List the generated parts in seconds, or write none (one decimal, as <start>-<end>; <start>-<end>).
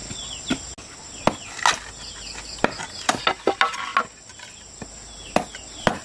none